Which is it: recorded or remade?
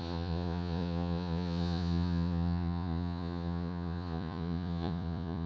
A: remade